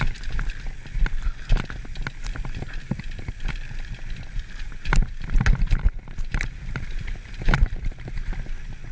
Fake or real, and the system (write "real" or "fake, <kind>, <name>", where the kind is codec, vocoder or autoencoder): real